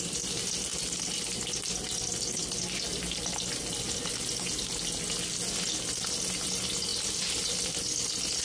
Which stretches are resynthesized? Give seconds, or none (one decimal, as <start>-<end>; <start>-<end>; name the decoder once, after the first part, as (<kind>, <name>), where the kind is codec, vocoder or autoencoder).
none